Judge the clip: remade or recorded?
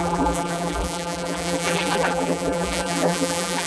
remade